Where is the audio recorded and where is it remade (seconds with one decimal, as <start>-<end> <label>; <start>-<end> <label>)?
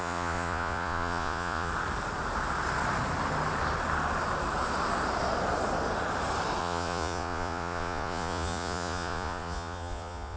0.0-1.7 remade; 1.7-6.6 recorded; 6.6-10.4 remade